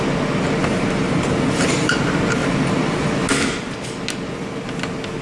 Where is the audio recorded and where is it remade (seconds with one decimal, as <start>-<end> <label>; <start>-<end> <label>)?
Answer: 0.0-0.6 recorded; 0.6-2.0 remade; 2.0-2.4 recorded; 2.4-3.1 remade; 3.1-5.2 recorded

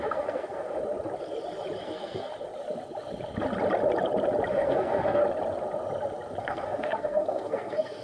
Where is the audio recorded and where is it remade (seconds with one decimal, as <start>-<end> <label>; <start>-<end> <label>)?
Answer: 0.0-0.8 remade; 0.8-1.8 recorded; 1.8-2.3 remade; 2.3-4.5 recorded; 4.5-5.2 remade; 5.2-6.4 recorded; 6.4-8.0 remade

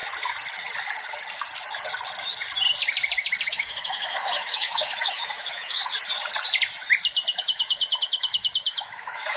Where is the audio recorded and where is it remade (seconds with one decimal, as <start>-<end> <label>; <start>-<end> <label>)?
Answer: 0.0-3.5 recorded; 3.5-5.8 remade; 5.8-7.4 recorded; 7.4-9.4 remade

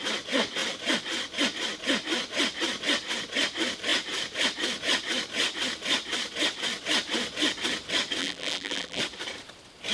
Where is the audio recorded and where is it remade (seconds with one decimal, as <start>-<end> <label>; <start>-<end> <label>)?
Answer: 0.0-8.2 recorded; 8.2-9.0 remade; 9.0-9.9 recorded

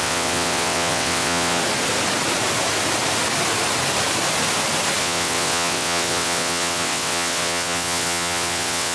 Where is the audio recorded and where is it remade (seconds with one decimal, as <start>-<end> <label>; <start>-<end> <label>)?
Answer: 0.0-1.6 remade; 1.6-5.0 recorded; 5.0-8.9 remade

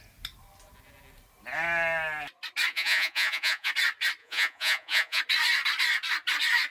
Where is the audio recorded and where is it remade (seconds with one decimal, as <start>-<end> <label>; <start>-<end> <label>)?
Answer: 0.0-2.7 recorded; 2.7-3.7 remade; 3.7-4.2 recorded; 4.2-5.2 remade; 5.2-6.7 recorded

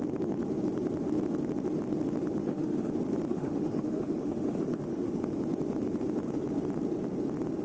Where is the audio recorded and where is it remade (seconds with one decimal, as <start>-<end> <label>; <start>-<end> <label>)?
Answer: 0.0-2.4 recorded; 2.4-2.9 remade; 2.9-3.3 recorded; 3.3-5.1 remade; 5.1-7.6 recorded

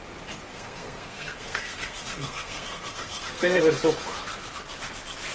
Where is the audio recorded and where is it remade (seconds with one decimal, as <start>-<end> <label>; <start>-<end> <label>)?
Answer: 0.0-0.5 recorded; 0.5-3.6 remade; 3.6-5.3 recorded